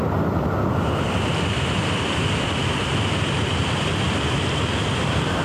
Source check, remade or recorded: recorded